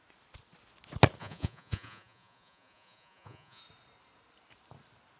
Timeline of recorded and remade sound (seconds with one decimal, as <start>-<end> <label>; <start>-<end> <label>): 0.0-1.2 recorded; 1.2-3.6 remade; 3.6-5.2 recorded